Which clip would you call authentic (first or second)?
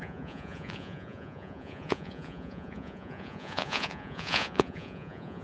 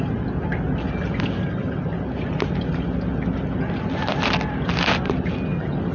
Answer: second